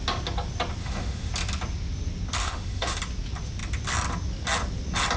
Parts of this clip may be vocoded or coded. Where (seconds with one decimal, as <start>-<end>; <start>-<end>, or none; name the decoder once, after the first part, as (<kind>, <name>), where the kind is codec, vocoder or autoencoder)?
0.8-1.3 (autoencoder, DAC-VAE); 2.4-3.0